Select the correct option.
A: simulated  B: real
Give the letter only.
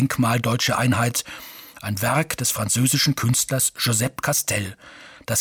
B